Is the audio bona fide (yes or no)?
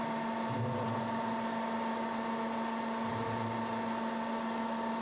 yes